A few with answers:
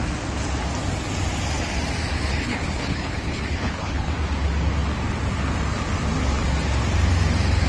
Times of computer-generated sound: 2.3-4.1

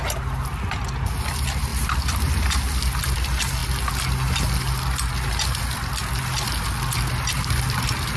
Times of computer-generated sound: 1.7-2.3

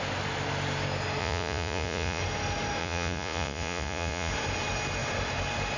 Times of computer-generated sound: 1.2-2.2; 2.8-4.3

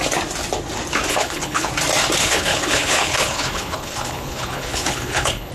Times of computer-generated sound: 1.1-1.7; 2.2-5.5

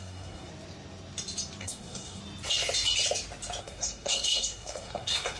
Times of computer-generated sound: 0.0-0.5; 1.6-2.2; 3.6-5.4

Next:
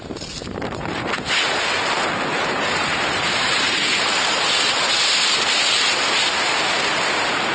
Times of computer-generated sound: 0.4-1.1; 2.3-6.0